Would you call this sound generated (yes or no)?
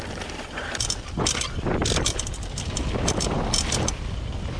no